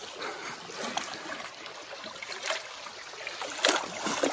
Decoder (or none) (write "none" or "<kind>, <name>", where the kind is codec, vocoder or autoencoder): none